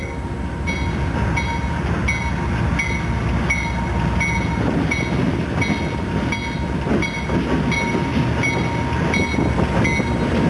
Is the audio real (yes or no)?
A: yes